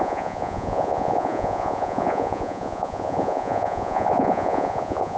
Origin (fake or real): fake